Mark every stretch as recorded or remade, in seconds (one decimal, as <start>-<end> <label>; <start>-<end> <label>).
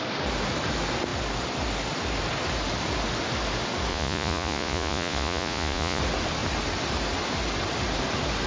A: 0.0-3.9 recorded; 3.9-6.0 remade; 6.0-8.5 recorded